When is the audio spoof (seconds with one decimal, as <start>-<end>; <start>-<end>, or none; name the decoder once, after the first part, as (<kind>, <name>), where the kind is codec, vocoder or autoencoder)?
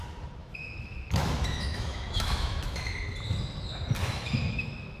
0.4-2.9 (autoencoder, DAC-VAE); 4.0-5.0